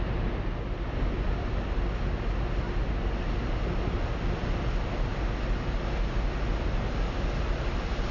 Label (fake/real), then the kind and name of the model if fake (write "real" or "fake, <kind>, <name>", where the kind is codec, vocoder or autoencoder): real